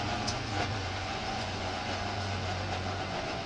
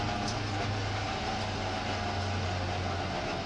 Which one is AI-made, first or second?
first